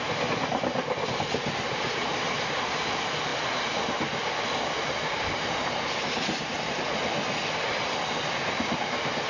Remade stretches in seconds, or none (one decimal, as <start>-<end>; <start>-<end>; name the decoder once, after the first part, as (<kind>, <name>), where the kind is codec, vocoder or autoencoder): none